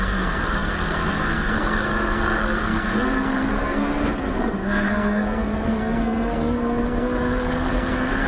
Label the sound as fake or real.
fake